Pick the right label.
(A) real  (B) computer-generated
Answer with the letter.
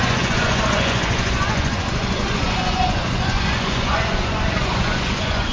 B